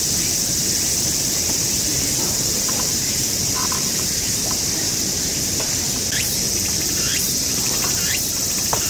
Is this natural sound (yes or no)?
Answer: no